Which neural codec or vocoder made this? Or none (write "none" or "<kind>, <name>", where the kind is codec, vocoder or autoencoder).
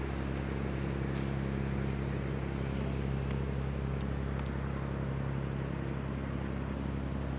none